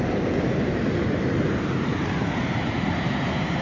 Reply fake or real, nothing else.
fake